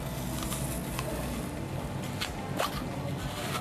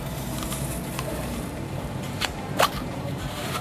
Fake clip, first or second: second